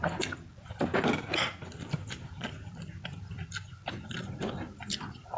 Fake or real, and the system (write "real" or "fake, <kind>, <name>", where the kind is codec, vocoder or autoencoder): real